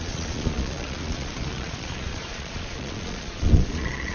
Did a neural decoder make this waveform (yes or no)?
yes